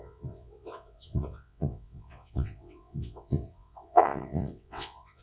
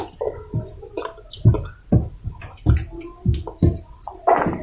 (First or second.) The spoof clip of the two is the first